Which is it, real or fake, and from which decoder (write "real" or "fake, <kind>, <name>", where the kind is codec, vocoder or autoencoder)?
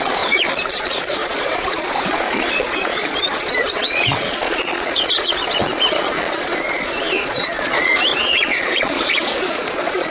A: fake, vocoder, Vocos